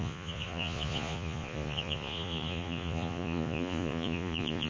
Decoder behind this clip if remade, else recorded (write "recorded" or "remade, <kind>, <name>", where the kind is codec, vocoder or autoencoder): remade, vocoder, Vocos